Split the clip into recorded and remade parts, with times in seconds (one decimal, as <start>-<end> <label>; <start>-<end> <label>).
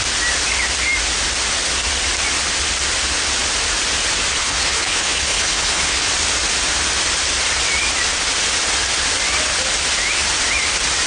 0.0-4.4 recorded; 4.4-6.1 remade; 6.1-11.1 recorded